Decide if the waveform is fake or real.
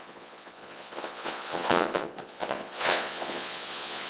fake